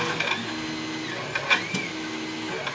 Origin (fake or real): real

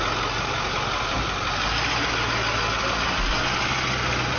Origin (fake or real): real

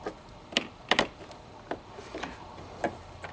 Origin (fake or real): real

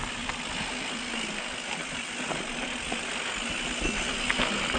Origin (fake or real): real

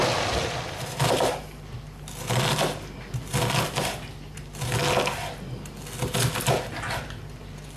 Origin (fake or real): real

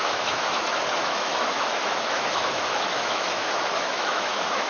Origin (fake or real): fake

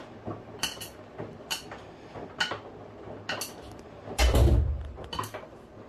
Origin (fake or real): real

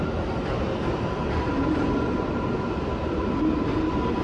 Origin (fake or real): real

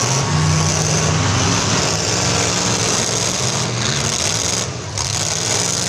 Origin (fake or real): real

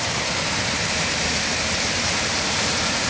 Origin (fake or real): fake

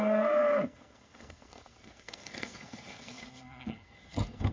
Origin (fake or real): fake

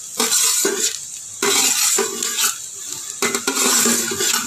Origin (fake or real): real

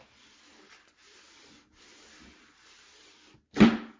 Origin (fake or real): real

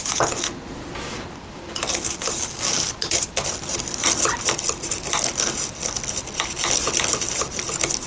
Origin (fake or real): real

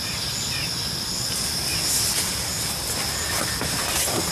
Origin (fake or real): real